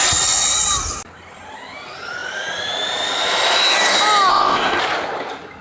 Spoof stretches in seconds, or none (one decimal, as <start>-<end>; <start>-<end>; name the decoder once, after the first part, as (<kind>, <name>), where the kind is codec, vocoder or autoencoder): 4.3-4.8 (codec, ZipCodec)